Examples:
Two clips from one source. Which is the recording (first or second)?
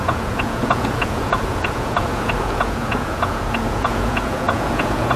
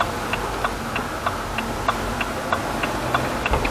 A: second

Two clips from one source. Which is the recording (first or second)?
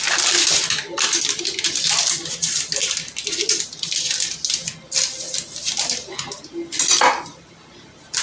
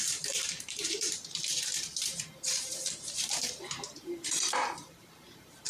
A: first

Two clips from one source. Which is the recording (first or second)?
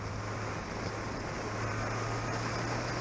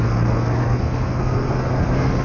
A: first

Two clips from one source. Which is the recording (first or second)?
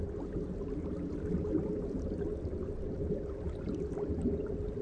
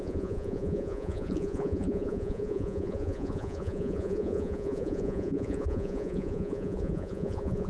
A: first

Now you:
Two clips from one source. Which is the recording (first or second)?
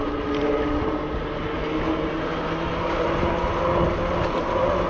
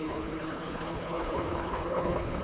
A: first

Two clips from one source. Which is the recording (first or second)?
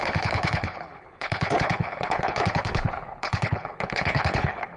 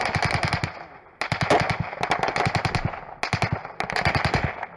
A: second